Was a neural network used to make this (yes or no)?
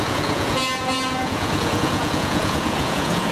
yes